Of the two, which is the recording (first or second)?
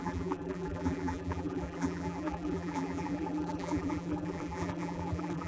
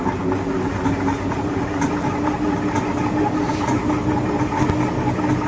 second